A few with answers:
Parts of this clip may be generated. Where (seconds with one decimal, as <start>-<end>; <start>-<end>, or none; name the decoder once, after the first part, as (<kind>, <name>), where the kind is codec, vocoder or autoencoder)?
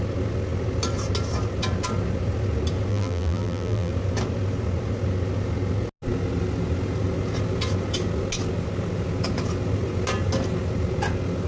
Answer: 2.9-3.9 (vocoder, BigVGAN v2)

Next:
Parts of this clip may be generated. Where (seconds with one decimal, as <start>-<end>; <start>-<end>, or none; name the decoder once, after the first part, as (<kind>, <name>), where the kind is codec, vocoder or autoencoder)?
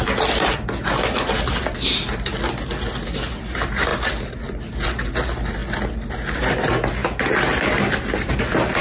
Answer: none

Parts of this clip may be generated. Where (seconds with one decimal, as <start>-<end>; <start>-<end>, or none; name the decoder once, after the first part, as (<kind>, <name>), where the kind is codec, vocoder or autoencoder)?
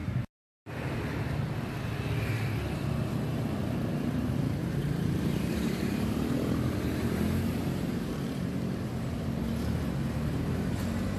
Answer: 0.0-0.7 (vocoder, BigVGAN v2); 3.9-8.9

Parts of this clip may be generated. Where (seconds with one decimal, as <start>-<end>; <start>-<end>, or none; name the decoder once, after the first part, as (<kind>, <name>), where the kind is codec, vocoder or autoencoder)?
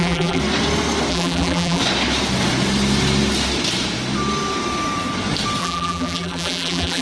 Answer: 0.0-0.4 (vocoder, BigVGAN v2); 1.1-1.8; 5.6-7.0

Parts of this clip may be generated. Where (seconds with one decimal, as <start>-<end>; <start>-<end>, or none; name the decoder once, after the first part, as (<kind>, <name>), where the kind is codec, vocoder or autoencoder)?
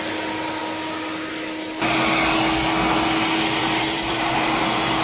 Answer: 3.6-4.6 (vocoder, BigVGAN v2)